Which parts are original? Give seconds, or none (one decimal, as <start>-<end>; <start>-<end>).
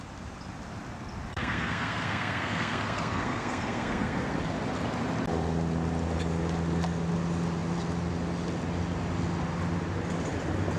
0.0-1.3; 4.4-10.8